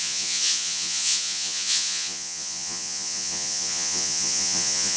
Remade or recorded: remade